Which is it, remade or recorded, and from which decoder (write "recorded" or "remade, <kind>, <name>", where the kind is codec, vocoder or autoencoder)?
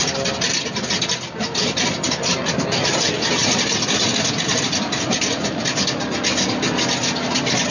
recorded